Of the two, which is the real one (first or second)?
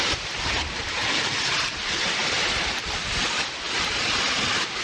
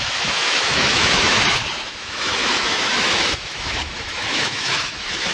first